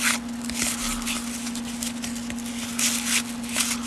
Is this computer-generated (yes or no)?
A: no